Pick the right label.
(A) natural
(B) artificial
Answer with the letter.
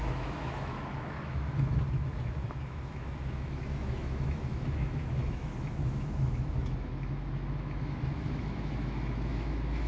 B